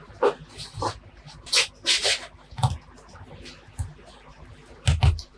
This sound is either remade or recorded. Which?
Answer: recorded